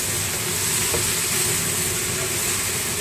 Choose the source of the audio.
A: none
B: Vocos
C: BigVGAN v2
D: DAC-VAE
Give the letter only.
A